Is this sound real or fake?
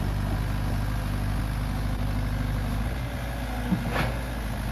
real